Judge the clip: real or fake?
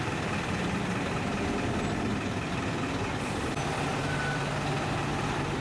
real